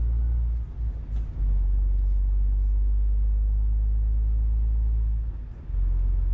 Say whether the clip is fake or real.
real